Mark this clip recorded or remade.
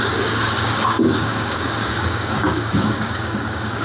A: remade